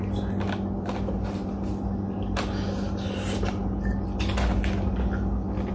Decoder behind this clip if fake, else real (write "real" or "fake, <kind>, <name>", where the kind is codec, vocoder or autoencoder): real